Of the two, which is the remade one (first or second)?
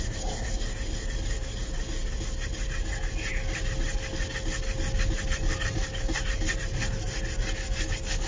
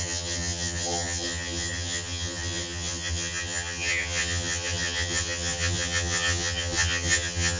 second